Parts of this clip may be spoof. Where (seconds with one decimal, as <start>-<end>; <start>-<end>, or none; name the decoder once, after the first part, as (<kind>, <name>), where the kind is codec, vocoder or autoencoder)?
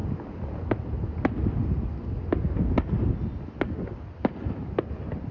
none